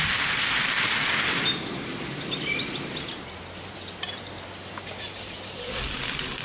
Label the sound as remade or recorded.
recorded